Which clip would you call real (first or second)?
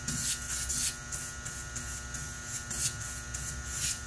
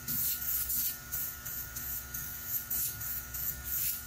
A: first